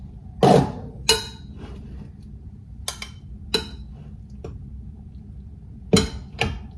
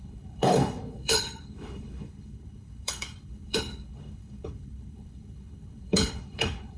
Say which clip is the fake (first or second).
second